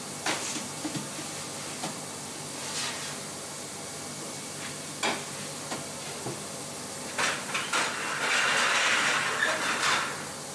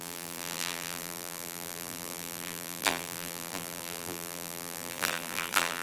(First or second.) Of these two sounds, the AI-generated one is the second